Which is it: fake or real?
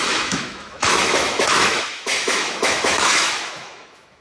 fake